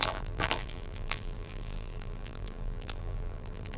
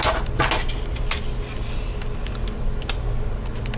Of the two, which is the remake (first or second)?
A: first